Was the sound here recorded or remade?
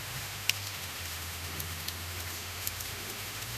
remade